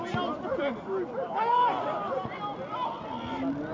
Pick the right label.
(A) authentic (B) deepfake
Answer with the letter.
A